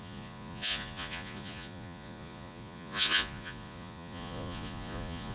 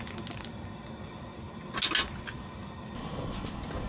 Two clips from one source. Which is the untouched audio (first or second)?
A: second